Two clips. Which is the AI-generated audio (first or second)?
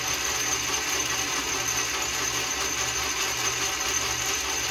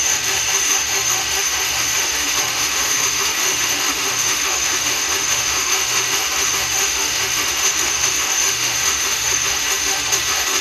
second